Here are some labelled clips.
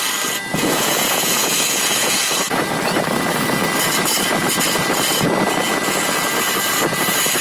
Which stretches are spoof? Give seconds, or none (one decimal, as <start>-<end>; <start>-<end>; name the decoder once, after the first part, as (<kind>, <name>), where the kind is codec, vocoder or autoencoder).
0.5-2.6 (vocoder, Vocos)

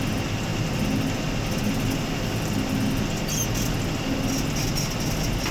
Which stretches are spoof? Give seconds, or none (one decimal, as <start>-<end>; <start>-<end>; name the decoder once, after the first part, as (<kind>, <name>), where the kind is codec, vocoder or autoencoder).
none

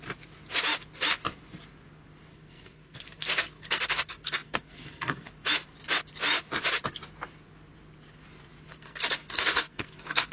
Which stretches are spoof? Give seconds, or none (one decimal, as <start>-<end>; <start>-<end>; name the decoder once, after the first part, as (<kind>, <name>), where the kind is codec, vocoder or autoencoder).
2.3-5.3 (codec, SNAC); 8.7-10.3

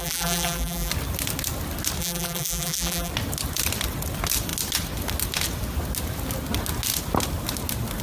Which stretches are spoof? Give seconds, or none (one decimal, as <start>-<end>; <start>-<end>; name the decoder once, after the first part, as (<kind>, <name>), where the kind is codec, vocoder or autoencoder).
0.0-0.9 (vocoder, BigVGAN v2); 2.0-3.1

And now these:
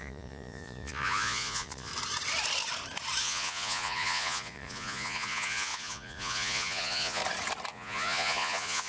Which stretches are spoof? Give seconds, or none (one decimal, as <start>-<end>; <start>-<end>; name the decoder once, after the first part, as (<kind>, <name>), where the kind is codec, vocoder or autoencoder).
0.0-1.9 (vocoder, Vocos); 3.2-7.2; 7.7-8.9